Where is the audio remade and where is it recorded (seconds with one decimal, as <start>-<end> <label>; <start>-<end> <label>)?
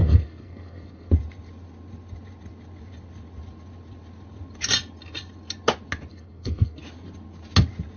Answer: 0.0-1.1 remade; 1.1-6.1 recorded; 6.1-6.8 remade; 6.8-8.0 recorded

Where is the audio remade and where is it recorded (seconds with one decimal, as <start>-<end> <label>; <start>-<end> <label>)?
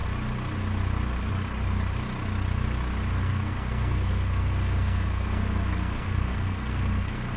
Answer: 0.0-3.1 recorded; 3.1-7.4 remade